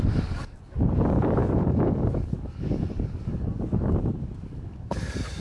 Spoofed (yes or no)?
yes